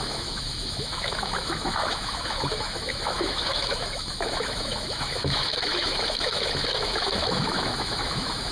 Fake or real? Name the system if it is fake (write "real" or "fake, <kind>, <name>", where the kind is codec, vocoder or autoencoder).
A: fake, autoencoder, DAC-VAE